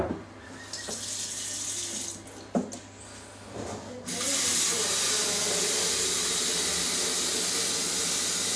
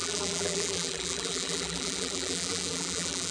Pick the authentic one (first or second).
first